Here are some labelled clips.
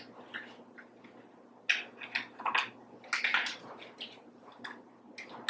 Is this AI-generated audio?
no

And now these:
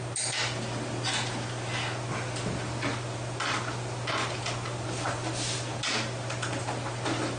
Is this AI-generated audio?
no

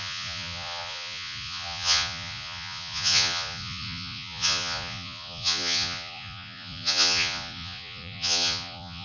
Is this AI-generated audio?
yes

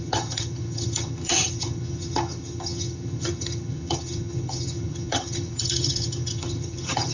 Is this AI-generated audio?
yes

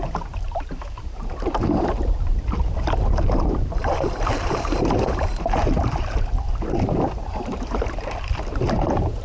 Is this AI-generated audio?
yes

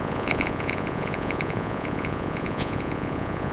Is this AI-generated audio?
yes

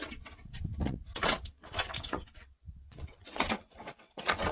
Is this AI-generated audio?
yes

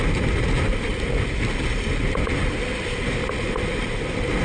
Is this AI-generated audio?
no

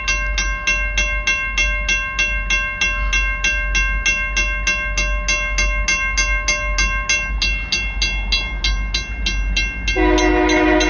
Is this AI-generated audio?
no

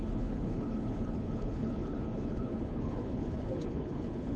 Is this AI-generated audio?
yes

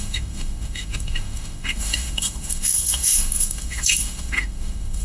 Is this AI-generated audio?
yes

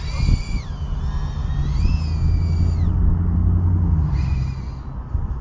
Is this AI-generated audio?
no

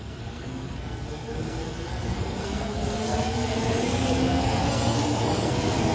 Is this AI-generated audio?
yes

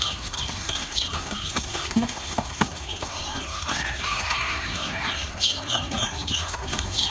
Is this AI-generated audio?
yes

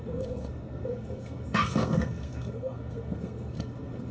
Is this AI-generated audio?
yes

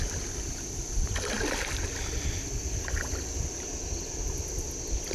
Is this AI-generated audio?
no